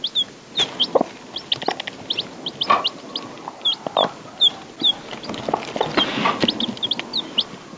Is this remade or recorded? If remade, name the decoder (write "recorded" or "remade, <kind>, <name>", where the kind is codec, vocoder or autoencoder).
recorded